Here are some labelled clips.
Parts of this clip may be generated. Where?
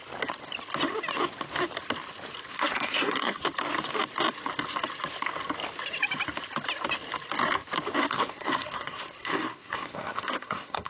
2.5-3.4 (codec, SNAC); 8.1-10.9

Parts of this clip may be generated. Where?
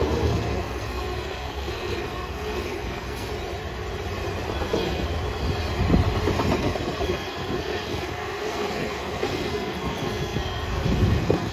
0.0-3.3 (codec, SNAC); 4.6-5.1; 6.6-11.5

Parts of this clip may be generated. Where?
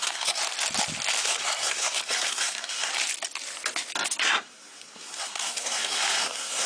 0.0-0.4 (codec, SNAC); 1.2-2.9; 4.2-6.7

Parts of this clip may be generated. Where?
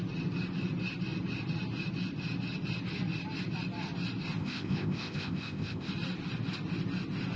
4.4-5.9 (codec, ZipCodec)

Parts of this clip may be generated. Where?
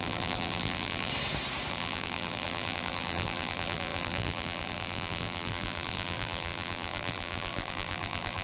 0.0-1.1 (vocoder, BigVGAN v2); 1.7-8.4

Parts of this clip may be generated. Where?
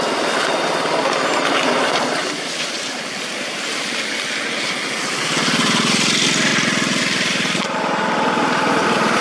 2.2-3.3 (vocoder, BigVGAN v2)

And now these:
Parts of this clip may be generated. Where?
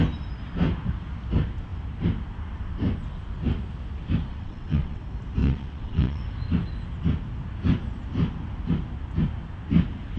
4.3-5.0 (vocoder, WaveNeXt); 5.4-6.2